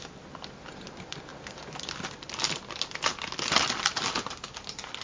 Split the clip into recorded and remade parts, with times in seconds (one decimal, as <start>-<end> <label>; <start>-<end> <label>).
0.0-5.0 recorded